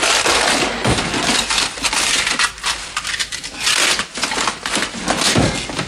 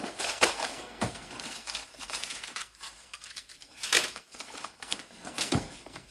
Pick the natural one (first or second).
first